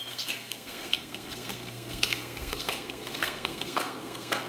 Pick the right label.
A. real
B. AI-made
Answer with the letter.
B